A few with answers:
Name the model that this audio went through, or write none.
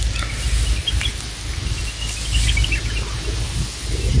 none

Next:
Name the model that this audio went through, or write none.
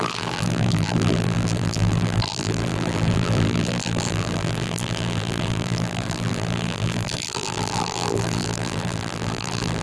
vocoder, BigVGAN v2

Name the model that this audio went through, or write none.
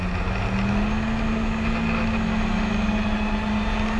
none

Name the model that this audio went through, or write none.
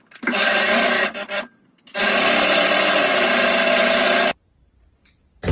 vocoder, BigVGAN v2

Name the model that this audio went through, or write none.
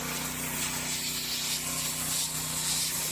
none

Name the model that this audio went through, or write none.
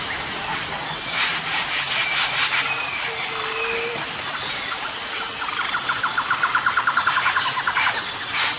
vocoder, BigVGAN v2